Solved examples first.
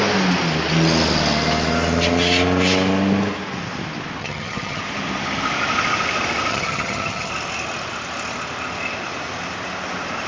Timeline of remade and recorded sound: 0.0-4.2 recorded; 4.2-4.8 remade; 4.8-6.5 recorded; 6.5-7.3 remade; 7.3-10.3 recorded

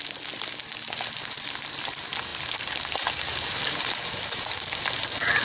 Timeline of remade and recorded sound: 0.0-5.4 recorded

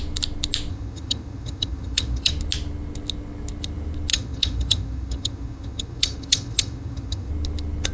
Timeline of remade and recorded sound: 0.0-0.7 recorded; 0.7-2.3 remade; 2.3-4.1 recorded; 4.1-7.3 remade; 7.3-7.9 recorded

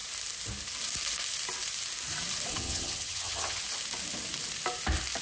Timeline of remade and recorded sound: 0.0-2.5 recorded; 2.5-3.6 remade; 3.6-5.2 recorded